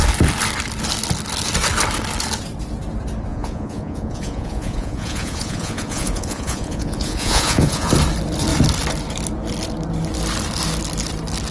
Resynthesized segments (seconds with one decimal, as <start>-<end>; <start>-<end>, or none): 3.3-7.9